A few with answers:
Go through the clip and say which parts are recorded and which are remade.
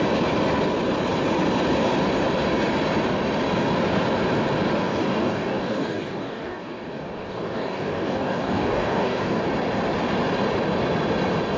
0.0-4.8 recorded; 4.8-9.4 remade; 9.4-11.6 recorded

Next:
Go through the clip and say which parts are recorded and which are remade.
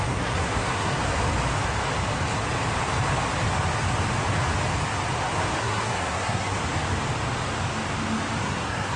0.0-1.0 remade; 1.0-5.6 recorded; 5.6-6.6 remade; 6.6-8.4 recorded; 8.4-9.0 remade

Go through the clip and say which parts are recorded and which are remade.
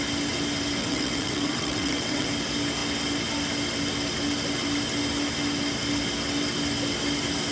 0.0-0.8 recorded; 0.8-2.3 remade; 2.3-7.5 recorded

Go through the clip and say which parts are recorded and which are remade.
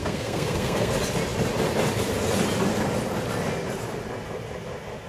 0.0-0.9 remade; 0.9-5.1 recorded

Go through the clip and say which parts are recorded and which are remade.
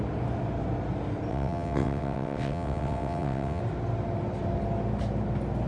0.0-1.3 recorded; 1.3-3.6 remade; 3.6-5.7 recorded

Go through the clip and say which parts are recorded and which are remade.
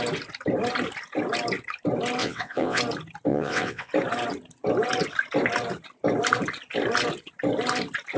0.0-2.2 recorded; 2.2-2.8 remade; 2.8-3.3 recorded; 3.3-3.9 remade; 3.9-8.2 recorded